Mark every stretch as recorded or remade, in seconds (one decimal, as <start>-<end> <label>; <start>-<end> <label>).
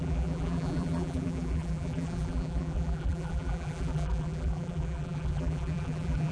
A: 0.0-6.3 remade